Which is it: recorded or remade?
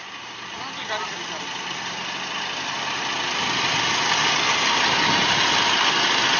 recorded